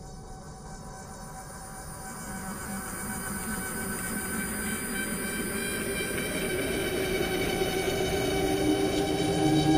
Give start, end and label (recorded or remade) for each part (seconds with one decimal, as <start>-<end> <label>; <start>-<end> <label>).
0.0-9.8 recorded